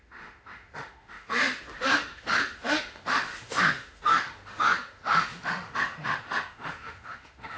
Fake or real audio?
fake